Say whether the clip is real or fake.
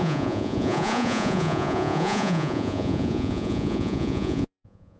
fake